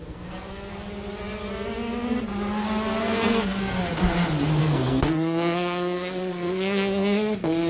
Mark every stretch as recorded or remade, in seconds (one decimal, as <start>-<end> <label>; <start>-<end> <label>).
0.0-0.7 remade; 0.7-3.0 recorded; 3.0-3.8 remade; 3.8-4.6 recorded; 4.6-7.7 remade